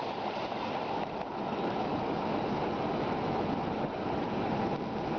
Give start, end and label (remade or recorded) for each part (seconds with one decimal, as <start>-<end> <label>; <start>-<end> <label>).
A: 0.0-1.4 recorded; 1.4-1.9 remade; 1.9-2.9 recorded; 2.9-3.5 remade; 3.5-5.2 recorded